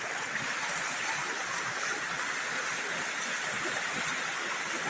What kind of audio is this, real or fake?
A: real